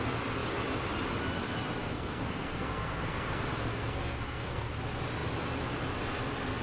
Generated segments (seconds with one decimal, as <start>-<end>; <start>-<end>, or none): 1.8-4.8